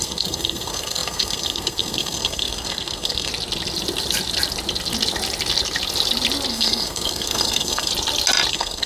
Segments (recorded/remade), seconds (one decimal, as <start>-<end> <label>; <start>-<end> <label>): 0.0-3.3 remade; 3.3-6.5 recorded; 6.5-7.9 remade; 7.9-8.5 recorded; 8.5-8.9 remade